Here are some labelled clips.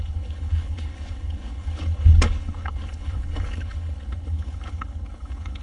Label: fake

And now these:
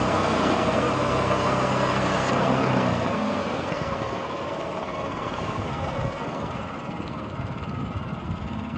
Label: fake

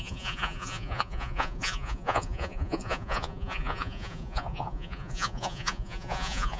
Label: fake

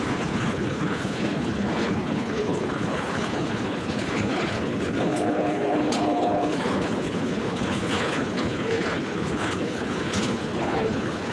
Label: fake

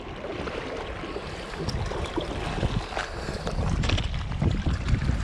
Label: real